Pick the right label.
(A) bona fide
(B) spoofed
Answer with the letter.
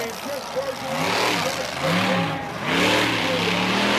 A